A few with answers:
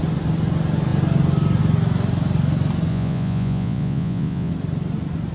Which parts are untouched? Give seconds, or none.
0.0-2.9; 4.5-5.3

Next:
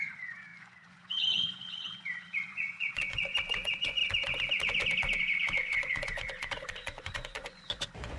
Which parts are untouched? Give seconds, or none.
4.0-5.2

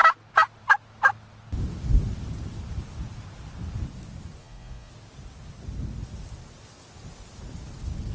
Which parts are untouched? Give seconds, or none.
0.0-4.4; 4.9-8.1

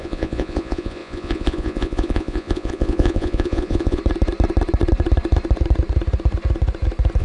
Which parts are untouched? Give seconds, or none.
4.0-7.2